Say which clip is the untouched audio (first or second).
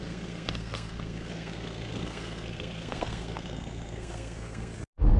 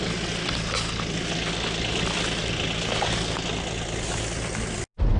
second